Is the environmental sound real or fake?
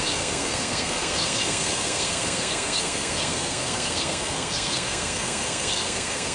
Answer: fake